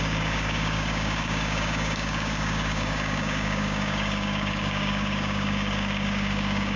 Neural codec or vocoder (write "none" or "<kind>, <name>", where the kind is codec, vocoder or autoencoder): codec, DAC